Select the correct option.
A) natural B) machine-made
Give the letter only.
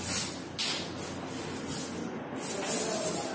A